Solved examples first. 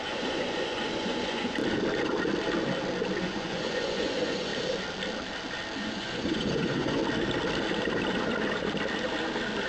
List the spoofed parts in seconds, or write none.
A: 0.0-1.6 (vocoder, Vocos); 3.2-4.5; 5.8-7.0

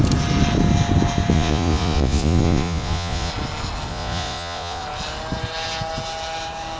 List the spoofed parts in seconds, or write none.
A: 1.3-3.3 (vocoder, Vocos); 3.9-4.8

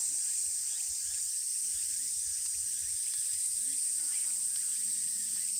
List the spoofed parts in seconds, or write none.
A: none

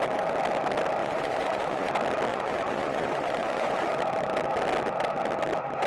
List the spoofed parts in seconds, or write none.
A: 1.0-1.9 (vocoder, Vocos); 2.3-4.0

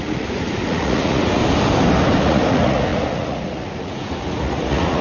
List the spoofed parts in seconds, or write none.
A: 0.0-1.4 (vocoder, Vocos); 2.2-5.0

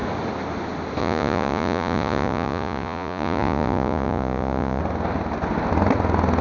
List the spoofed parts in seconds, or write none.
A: 1.0-4.8 (vocoder, Vocos)

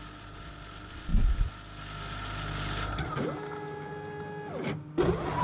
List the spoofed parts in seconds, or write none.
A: none